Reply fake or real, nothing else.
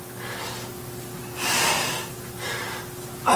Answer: real